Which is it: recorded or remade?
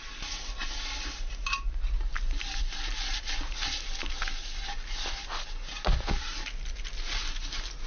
recorded